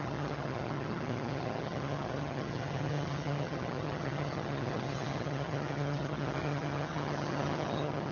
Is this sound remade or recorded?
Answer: remade